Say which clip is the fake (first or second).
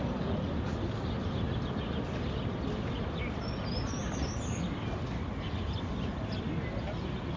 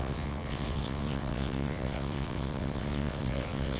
second